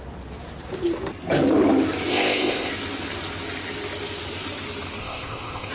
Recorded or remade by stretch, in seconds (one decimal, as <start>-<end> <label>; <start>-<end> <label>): 0.0-2.1 recorded; 2.1-2.7 remade; 2.7-5.0 recorded; 5.0-5.7 remade